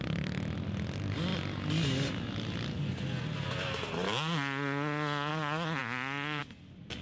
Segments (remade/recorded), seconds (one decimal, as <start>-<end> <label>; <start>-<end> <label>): 0.0-7.0 recorded